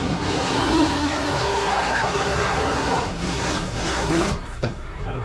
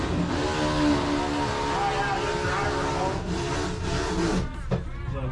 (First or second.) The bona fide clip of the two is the second